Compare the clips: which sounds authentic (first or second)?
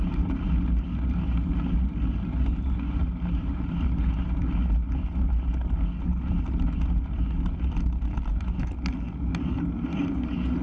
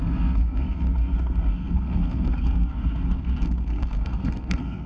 first